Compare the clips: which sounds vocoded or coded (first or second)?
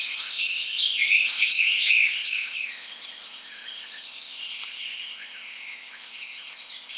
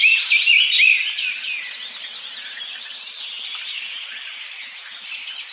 first